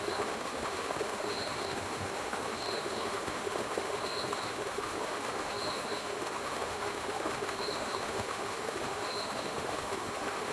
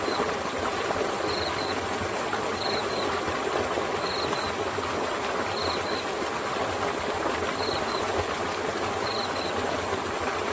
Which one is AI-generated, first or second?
first